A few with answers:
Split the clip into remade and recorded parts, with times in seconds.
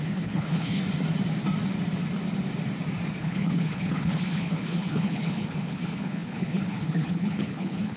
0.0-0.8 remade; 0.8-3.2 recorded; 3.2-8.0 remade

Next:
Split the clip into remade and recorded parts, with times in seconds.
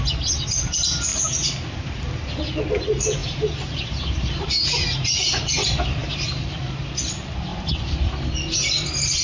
0.0-1.1 recorded; 1.1-1.7 remade; 1.7-3.2 recorded; 3.2-4.5 remade; 4.5-6.0 recorded; 6.0-6.8 remade; 6.8-7.5 recorded; 7.5-8.0 remade; 8.0-9.2 recorded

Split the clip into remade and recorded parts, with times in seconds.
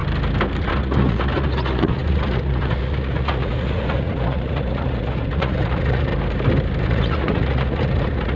0.0-0.6 recorded; 0.6-6.1 remade; 6.1-6.8 recorded; 6.8-8.4 remade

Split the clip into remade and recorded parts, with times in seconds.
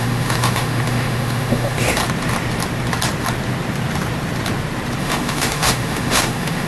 0.0-2.0 remade; 2.0-5.0 recorded; 5.0-6.7 remade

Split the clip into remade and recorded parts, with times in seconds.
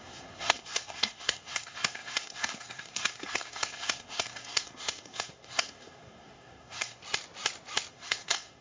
0.0-7.0 remade; 7.0-7.9 recorded; 7.9-8.6 remade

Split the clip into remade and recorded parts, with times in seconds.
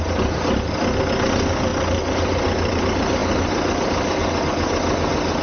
0.0-5.4 recorded